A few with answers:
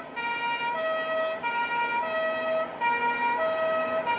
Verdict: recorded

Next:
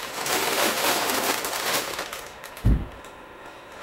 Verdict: remade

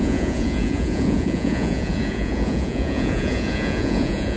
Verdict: remade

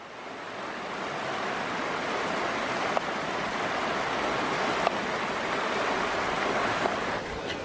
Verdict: recorded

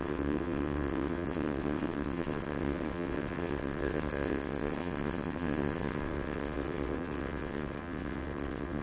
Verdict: remade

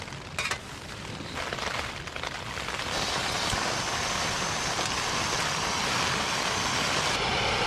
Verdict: recorded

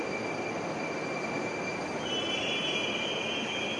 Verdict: recorded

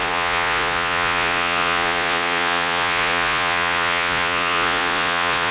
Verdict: remade